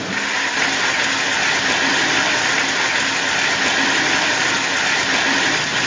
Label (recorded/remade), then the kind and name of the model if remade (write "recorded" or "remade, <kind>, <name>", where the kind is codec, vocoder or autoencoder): recorded